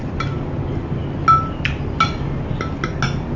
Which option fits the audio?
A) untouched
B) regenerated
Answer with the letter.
A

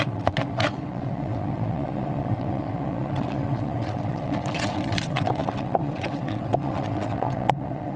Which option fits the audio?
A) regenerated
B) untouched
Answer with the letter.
A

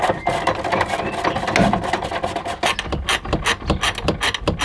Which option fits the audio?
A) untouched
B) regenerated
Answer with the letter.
A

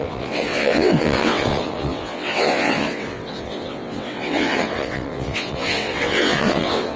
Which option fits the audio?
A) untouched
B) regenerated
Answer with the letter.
B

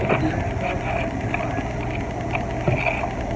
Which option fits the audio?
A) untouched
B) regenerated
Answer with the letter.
A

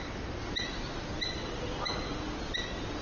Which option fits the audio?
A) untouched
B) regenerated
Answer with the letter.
A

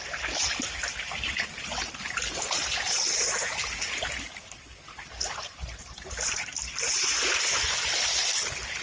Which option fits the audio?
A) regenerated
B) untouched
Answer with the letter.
B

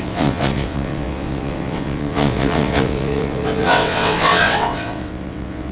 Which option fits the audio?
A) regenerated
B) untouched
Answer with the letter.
A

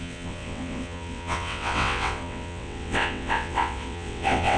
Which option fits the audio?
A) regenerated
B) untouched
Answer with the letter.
A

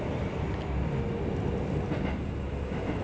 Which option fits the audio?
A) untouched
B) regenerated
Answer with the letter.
A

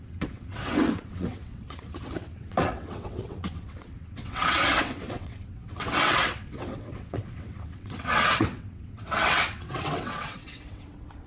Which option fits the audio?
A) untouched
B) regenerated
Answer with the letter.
B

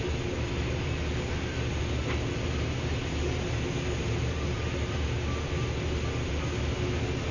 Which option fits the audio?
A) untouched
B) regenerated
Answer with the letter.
A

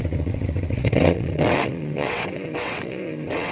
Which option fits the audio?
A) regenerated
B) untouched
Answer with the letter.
A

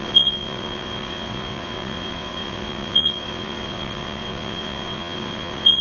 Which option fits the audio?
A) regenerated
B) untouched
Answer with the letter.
A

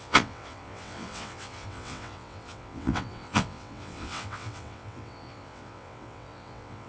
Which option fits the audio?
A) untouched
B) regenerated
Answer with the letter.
B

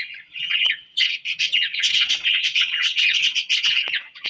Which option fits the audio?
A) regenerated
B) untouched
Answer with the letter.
A